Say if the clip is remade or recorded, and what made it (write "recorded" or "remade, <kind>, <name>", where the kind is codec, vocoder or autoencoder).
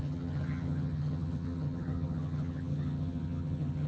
remade, vocoder, HiFi-GAN